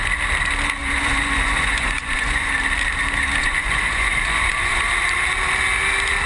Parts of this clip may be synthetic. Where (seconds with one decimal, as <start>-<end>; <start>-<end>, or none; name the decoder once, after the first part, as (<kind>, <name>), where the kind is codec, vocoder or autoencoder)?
0.8-2.5 (vocoder, Vocos); 3.4-4.8